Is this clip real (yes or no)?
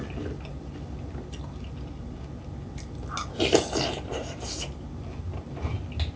yes